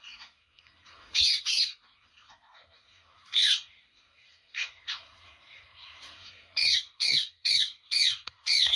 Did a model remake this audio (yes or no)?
yes